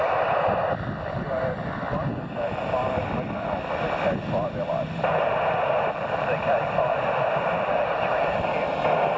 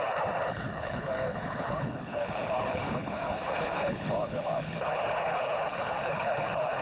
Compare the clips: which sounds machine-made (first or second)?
second